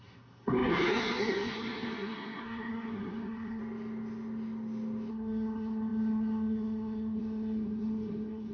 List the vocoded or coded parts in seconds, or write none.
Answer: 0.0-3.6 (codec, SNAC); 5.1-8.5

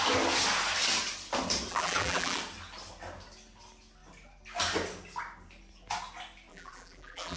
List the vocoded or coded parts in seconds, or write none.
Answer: 1.7-2.4 (vocoder, BigVGAN v2); 6.5-7.4

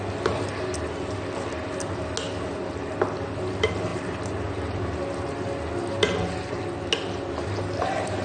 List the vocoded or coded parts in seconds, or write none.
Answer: none

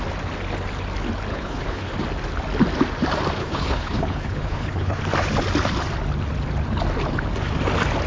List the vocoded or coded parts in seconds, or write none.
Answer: 1.3-1.9 (codec, HILCodec); 3.4-5.0

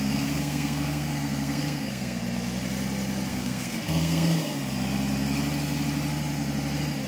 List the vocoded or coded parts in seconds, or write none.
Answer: 0.0-2.2 (codec, SNAC); 3.3-4.6

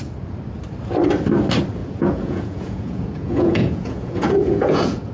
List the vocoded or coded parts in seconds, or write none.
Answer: 1.8-5.1 (vocoder, Vocos)